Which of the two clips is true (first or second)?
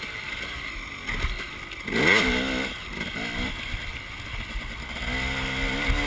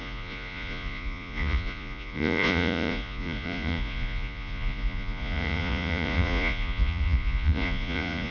first